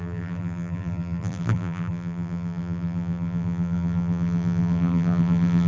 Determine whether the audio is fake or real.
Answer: fake